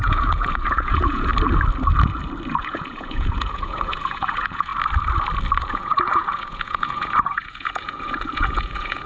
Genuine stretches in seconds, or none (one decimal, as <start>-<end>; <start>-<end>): 1.3-2.6; 4.7-5.6